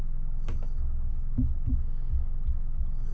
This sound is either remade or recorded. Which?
recorded